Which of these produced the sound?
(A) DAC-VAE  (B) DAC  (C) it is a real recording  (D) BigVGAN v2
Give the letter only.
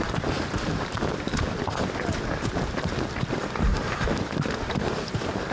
D